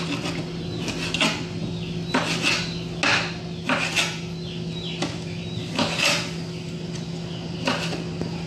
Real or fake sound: real